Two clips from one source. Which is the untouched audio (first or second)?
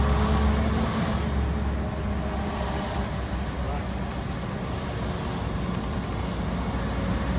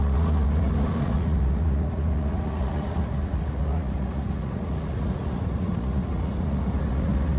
first